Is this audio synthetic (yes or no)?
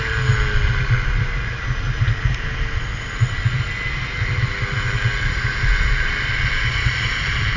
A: no